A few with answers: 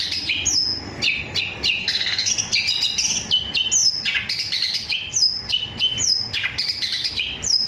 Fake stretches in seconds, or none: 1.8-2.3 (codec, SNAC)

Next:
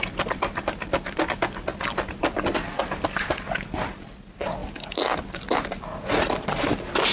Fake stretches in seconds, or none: none

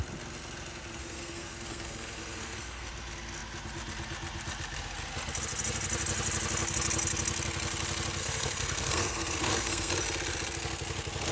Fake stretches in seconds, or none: 1.0-2.9 (codec, SNAC); 8.2-9.9